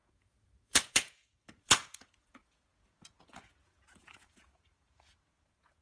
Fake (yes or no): yes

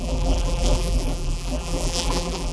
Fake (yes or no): yes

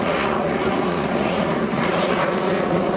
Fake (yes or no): yes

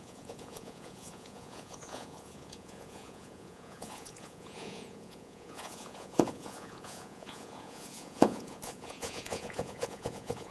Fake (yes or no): yes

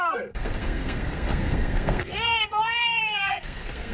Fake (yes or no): yes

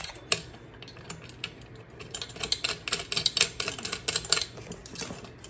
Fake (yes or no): no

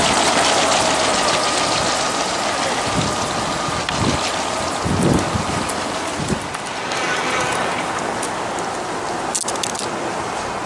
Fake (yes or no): no